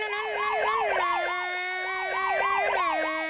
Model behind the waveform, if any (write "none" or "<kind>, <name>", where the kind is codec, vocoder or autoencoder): none